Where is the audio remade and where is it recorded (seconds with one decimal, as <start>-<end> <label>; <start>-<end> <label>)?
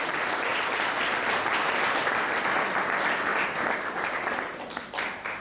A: 0.0-5.4 recorded